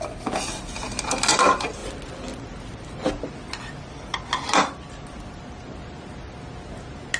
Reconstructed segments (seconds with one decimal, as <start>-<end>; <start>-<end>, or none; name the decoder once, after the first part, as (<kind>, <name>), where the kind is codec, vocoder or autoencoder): none